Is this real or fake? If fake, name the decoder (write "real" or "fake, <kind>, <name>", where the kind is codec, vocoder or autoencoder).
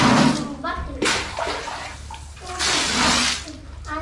real